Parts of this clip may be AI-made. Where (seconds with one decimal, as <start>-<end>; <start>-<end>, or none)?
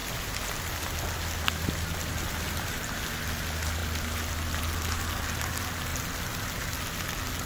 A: 0.0-3.0; 5.9-6.8